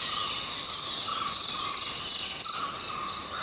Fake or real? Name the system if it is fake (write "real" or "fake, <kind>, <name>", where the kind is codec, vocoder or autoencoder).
real